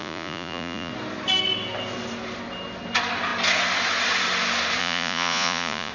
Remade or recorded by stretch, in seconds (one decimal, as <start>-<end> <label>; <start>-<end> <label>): 0.0-0.9 remade; 0.9-4.8 recorded; 4.8-5.9 remade